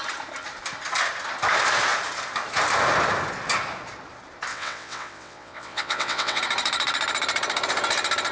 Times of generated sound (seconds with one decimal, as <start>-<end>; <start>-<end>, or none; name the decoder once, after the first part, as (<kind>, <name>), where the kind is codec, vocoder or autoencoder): 4.5-6.4 (vocoder, WaveNeXt)